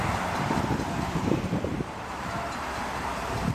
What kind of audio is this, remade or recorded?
remade